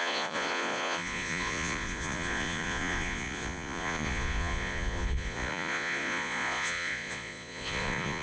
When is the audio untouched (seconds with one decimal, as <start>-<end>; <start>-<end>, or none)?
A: none